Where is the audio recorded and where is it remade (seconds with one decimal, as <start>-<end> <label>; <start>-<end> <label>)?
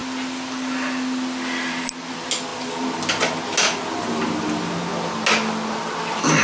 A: 0.0-6.4 recorded